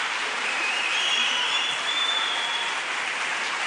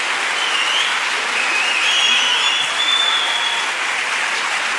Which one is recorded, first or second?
second